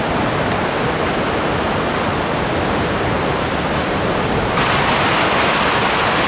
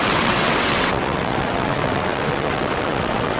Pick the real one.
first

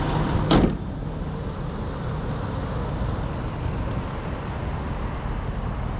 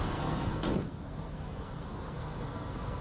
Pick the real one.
first